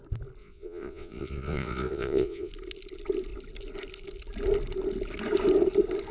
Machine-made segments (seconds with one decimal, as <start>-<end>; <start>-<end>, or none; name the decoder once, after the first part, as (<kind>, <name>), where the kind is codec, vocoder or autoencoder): 0.4-2.5 (vocoder, Vocos)